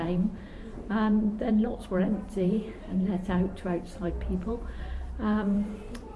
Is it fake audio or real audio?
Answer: fake